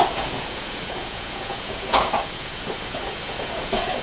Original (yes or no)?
no